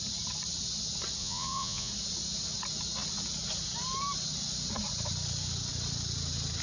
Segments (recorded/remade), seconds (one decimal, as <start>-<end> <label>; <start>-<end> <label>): 0.0-1.2 recorded; 1.2-1.9 remade; 1.9-6.6 recorded